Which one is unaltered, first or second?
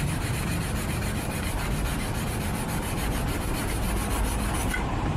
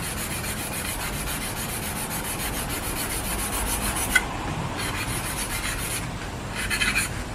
second